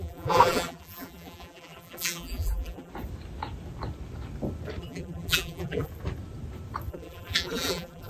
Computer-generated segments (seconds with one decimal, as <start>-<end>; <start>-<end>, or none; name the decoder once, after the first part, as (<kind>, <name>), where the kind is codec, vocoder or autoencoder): 0.0-2.9 (vocoder, BigVGAN v2); 4.8-5.9; 6.9-8.1